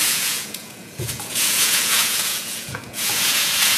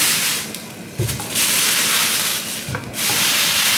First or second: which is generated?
first